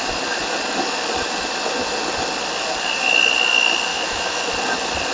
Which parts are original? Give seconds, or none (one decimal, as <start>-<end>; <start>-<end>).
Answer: 0.0-3.9; 4.5-5.1